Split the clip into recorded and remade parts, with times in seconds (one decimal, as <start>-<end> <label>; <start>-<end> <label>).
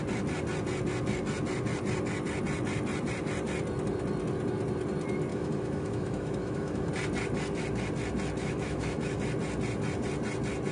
0.0-5.3 recorded; 5.3-6.9 remade; 6.9-8.4 recorded; 8.4-9.2 remade; 9.2-10.7 recorded